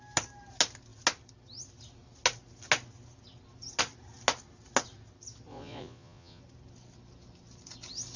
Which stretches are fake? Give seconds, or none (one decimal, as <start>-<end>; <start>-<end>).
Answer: 5.5-6.4